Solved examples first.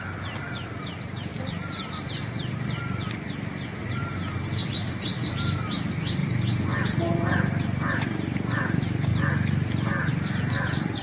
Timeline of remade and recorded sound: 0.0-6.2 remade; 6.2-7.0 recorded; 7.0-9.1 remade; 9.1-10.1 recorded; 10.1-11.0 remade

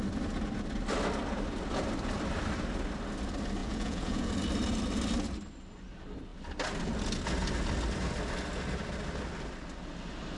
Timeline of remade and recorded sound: 0.0-3.6 recorded; 3.6-4.3 remade; 4.3-10.4 recorded

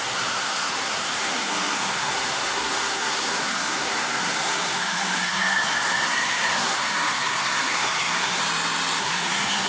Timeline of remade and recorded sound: 0.0-8.4 remade; 8.4-9.0 recorded; 9.0-9.7 remade